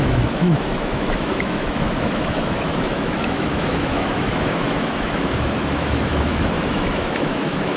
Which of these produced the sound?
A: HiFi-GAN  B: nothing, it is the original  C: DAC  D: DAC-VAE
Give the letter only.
D